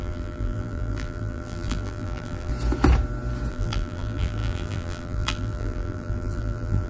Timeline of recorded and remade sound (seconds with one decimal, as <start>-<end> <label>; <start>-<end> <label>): 0.0-2.5 remade; 2.5-3.5 recorded; 3.5-6.9 remade

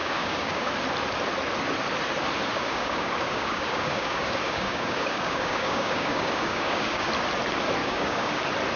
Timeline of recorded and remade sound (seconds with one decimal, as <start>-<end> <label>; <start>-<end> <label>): 0.0-0.7 remade; 0.7-2.5 recorded; 2.5-7.1 remade; 7.1-7.8 recorded; 7.8-8.4 remade; 8.4-8.8 recorded

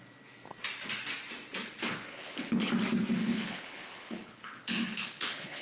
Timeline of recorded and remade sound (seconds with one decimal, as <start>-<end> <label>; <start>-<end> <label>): 0.0-2.1 recorded; 2.1-2.7 remade; 2.7-3.2 recorded; 3.2-5.6 remade

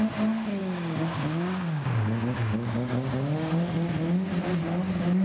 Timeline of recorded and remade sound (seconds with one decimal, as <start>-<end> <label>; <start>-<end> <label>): 0.0-0.6 recorded; 0.6-3.7 remade; 3.7-5.2 recorded

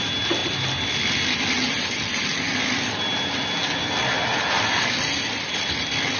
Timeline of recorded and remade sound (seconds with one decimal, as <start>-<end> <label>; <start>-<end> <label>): 0.0-6.2 recorded

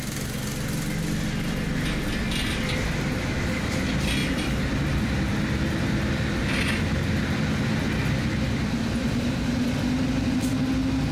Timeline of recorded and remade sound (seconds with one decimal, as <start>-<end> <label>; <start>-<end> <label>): 0.0-4.2 recorded; 4.2-5.0 remade; 5.0-11.1 recorded